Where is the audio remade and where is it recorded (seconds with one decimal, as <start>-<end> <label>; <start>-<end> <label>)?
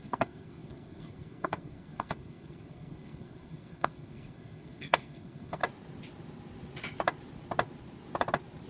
0.0-5.6 remade; 5.6-8.7 recorded